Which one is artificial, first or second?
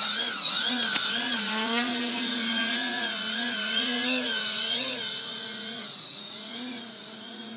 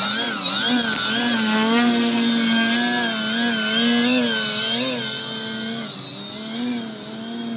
first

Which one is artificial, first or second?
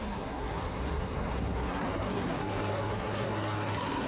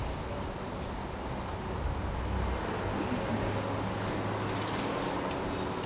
first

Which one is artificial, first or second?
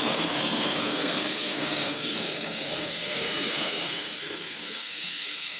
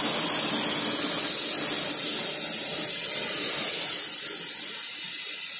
first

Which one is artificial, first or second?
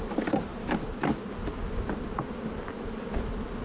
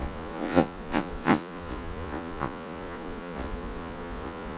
second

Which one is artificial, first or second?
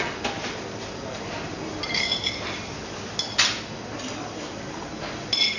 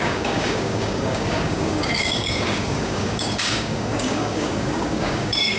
second